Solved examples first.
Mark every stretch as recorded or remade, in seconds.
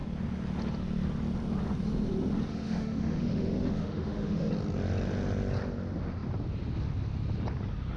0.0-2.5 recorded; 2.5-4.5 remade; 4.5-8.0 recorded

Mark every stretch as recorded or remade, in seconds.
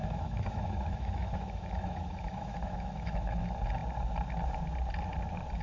0.0-3.4 remade; 3.4-5.6 recorded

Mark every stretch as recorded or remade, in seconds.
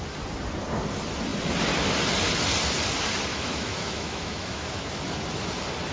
0.0-3.3 recorded; 3.3-4.9 remade; 4.9-5.9 recorded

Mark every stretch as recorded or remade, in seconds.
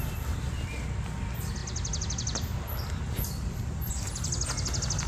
0.0-5.1 recorded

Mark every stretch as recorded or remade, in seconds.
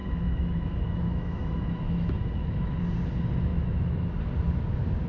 0.0-2.8 remade; 2.8-3.5 recorded; 3.5-4.2 remade; 4.2-5.1 recorded